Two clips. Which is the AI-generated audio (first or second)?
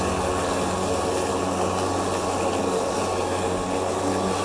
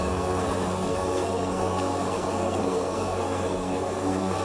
second